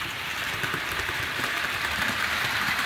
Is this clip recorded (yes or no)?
no